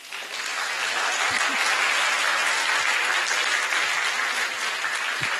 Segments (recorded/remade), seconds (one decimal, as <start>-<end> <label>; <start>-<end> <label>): 0.0-0.5 recorded; 0.5-1.4 remade; 1.4-2.4 recorded; 2.4-3.1 remade; 3.1-5.4 recorded